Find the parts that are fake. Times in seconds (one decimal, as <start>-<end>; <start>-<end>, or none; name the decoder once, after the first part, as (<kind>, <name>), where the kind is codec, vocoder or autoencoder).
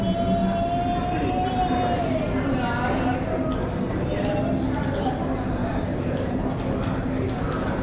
5.6-6.5 (vocoder, BigVGAN v2)